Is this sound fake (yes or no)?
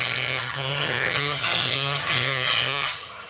yes